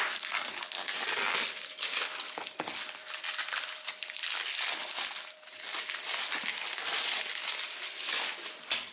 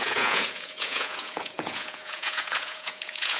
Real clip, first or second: first